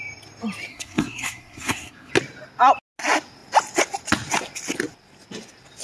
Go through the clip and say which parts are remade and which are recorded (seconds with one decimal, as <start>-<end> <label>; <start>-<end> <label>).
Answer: 0.0-0.7 recorded; 0.7-2.1 remade; 2.1-5.8 recorded